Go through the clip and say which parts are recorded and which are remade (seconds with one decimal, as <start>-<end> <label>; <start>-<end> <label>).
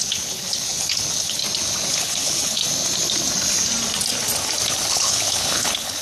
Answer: 0.0-1.4 remade; 1.4-1.9 recorded; 1.9-2.6 remade; 2.6-4.9 recorded; 4.9-6.0 remade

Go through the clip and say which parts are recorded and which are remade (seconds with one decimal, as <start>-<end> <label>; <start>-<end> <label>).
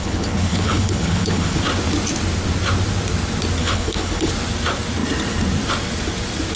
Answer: 0.0-1.6 remade; 1.6-3.6 recorded; 3.6-4.3 remade; 4.3-6.6 recorded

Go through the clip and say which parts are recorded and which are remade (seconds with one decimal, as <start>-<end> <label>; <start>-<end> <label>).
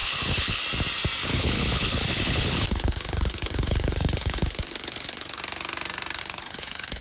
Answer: 0.0-0.6 remade; 0.6-1.2 recorded; 1.2-5.4 remade; 5.4-6.2 recorded; 6.2-7.0 remade